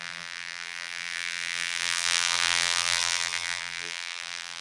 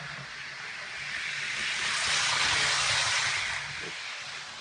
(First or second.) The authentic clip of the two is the second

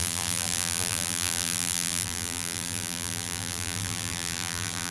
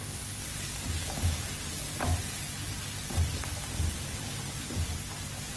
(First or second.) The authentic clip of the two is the second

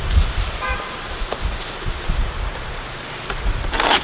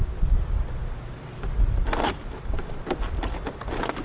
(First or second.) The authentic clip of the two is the second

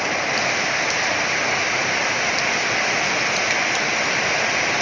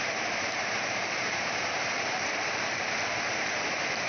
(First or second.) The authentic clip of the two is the first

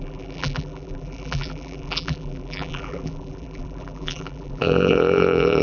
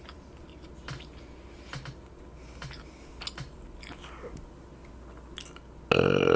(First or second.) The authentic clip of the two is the second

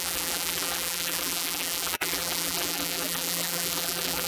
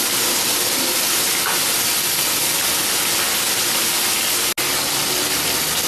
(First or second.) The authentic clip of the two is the second